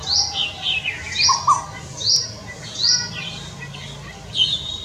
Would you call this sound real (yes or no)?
yes